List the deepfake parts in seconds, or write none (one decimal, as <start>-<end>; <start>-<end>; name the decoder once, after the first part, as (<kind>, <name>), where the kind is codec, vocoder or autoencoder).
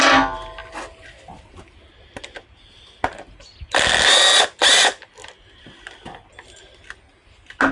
none